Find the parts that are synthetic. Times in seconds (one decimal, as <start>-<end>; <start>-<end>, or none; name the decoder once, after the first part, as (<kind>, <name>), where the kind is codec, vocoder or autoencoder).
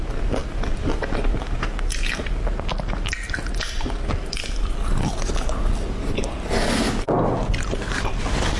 none